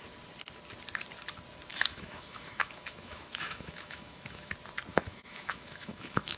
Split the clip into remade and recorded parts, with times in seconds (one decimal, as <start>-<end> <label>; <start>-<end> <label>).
0.0-1.7 recorded; 1.7-4.5 remade; 4.5-4.9 recorded; 4.9-6.4 remade